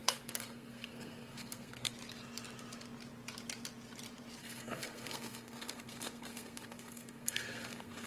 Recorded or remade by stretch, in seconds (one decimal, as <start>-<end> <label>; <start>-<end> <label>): 0.0-1.9 remade; 1.9-4.4 recorded; 4.4-8.1 remade